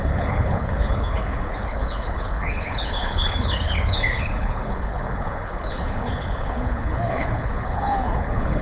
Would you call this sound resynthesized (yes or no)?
yes